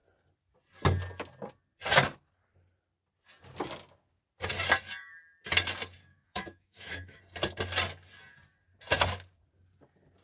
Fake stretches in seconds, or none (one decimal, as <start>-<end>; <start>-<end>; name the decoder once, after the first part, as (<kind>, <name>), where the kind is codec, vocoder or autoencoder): 6.1-7.2 (autoencoder, DAC-VAE)